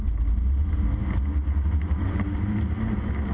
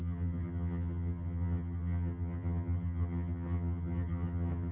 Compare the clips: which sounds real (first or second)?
first